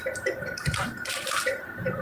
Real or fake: fake